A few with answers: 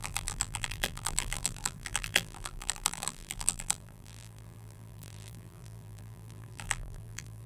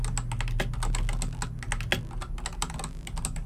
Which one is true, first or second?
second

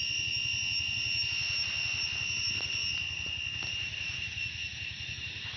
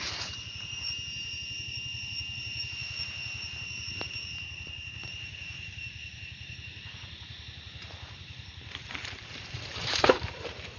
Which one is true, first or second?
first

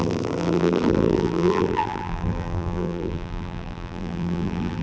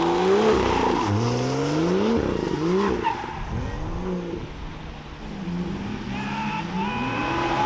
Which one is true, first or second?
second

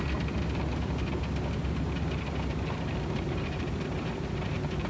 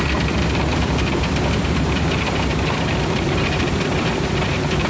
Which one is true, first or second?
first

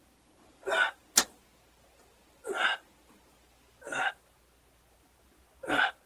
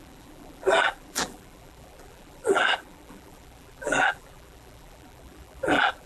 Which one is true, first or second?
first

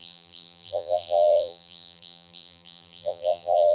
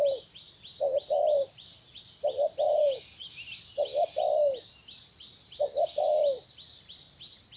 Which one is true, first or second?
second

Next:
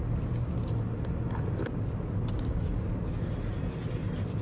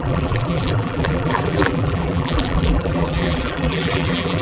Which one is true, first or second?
first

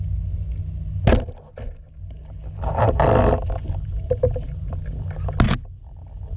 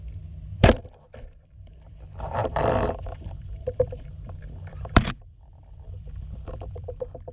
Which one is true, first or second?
first